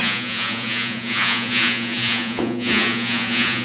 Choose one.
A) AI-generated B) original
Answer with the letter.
A